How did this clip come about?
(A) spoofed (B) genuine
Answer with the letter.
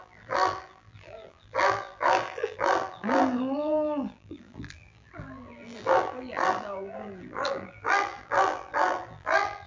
A